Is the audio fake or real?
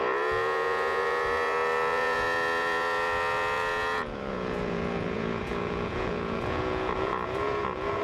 fake